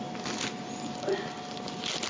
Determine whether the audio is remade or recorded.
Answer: recorded